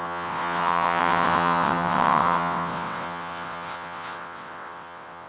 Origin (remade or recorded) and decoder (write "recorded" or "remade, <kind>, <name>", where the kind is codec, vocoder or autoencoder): remade, vocoder, WaveNeXt